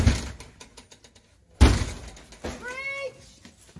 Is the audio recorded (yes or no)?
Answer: yes